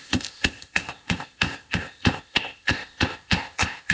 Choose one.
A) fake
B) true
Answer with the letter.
A